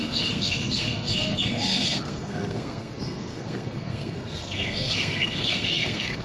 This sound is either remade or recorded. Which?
remade